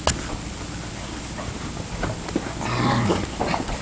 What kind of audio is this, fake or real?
real